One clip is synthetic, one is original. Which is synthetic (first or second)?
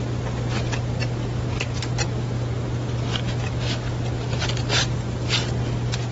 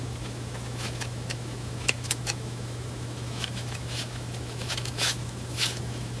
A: second